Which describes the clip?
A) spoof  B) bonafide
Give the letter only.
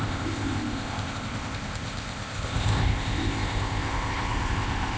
A